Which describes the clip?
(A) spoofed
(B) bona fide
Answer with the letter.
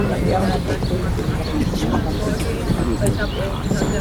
B